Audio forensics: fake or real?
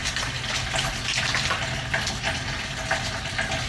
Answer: real